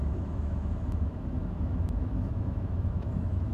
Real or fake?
fake